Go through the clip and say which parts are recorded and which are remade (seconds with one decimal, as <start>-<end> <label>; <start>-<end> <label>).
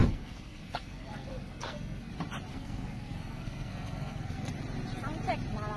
0.0-2.1 remade; 2.1-2.5 recorded; 2.5-4.5 remade; 4.5-5.8 recorded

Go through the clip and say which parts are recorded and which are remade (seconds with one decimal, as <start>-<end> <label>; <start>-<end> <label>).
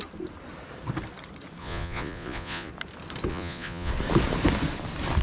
0.0-1.6 recorded; 1.6-2.7 remade; 2.7-3.3 recorded; 3.3-3.9 remade; 3.9-5.2 recorded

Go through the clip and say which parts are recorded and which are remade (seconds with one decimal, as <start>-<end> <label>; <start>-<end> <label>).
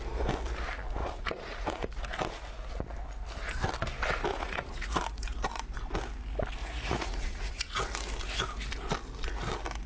0.0-1.0 recorded; 1.0-1.9 remade; 1.9-4.3 recorded; 4.3-5.0 remade; 5.0-6.6 recorded; 6.6-7.8 remade; 7.8-9.9 recorded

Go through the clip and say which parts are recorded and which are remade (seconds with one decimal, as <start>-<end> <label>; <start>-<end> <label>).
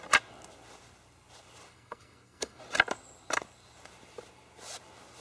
0.0-1.7 recorded; 1.7-2.6 remade; 2.6-5.2 recorded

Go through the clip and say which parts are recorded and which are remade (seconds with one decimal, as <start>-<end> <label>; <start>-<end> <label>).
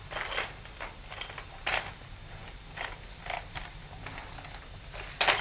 0.0-5.4 recorded